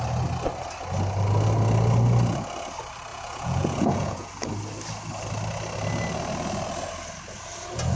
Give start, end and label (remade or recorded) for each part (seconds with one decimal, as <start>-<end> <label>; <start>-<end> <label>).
0.0-3.1 recorded; 3.1-4.3 remade; 4.3-8.0 recorded